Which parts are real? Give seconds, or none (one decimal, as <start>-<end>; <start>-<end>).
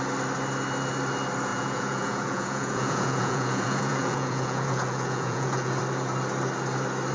0.0-1.5; 5.8-7.1